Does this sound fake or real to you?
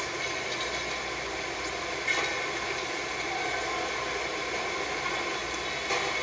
real